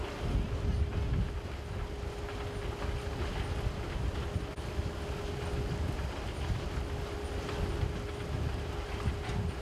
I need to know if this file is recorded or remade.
recorded